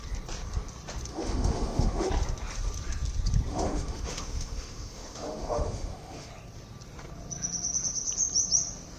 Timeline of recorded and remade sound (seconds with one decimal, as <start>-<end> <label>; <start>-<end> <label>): 0.0-1.1 recorded; 1.1-2.1 remade; 2.1-3.5 recorded; 3.5-6.3 remade; 6.3-9.0 recorded